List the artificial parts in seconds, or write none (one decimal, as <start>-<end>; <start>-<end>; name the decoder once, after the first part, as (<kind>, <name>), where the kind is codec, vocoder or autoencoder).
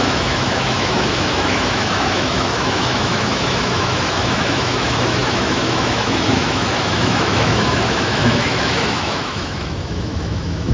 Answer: 0.0-10.7 (autoencoder, DAC-VAE)